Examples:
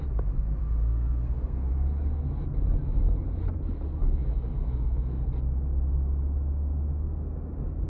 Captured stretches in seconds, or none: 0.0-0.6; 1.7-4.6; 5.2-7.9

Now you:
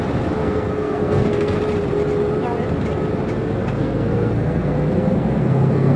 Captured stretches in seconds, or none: 0.0-0.4; 1.6-3.6

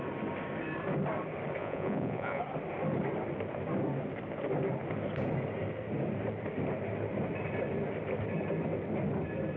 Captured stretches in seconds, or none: 0.0-1.6; 2.4-9.6

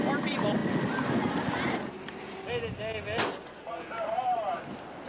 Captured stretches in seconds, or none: 0.0-5.1